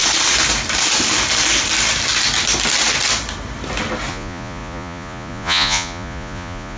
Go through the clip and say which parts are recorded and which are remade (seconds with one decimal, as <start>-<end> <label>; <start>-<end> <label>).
0.0-4.1 recorded; 4.1-6.8 remade